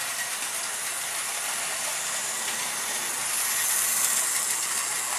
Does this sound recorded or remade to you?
recorded